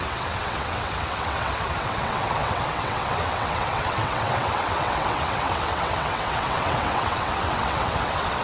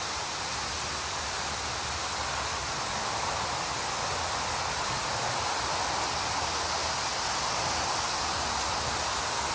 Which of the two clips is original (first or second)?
second